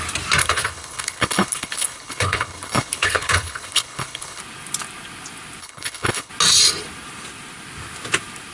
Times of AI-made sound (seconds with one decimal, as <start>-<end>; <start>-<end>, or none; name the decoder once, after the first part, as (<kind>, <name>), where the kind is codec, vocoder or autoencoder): 0.4-4.4 (codec, HILCodec); 5.6-6.3